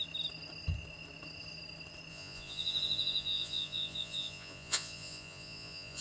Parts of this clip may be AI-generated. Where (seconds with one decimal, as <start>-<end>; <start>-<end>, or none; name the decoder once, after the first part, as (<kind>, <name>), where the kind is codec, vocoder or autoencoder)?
2.1-6.0 (vocoder, Vocos)